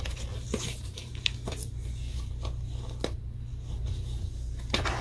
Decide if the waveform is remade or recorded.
recorded